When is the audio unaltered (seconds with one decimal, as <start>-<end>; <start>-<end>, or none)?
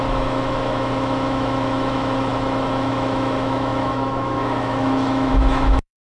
none